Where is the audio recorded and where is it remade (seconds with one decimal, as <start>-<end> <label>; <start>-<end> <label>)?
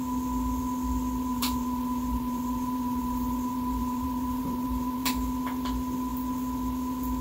0.0-1.3 recorded; 1.3-5.1 remade; 5.1-7.2 recorded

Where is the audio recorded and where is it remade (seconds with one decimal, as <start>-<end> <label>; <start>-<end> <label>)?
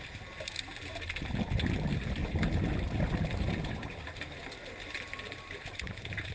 0.0-2.2 recorded; 2.2-6.3 remade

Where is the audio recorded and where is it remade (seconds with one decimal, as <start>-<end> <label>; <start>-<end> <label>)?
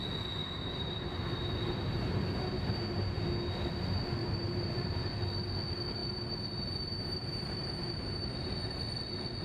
0.0-0.4 recorded; 0.4-2.7 remade; 2.7-4.2 recorded; 4.2-5.1 remade; 5.1-6.0 recorded; 6.0-8.8 remade; 8.8-9.4 recorded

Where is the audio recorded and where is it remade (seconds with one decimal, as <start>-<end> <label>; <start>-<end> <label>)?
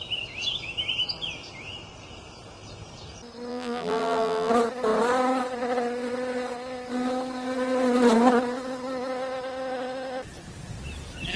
0.0-3.5 recorded; 3.5-4.5 remade; 4.5-11.4 recorded